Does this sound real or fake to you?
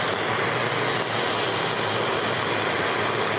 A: real